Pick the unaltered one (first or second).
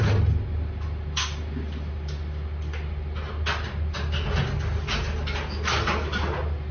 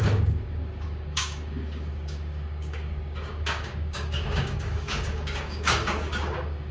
first